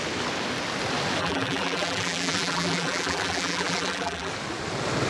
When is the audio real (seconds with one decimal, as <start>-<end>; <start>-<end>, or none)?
0.0-1.2; 4.3-5.1